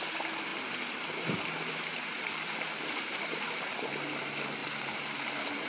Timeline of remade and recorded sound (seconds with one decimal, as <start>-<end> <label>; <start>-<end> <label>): 0.0-0.5 recorded; 0.5-3.9 remade; 3.9-4.6 recorded; 4.6-5.3 remade; 5.3-5.7 recorded